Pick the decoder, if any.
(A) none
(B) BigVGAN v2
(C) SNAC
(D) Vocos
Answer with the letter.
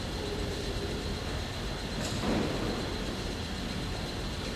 A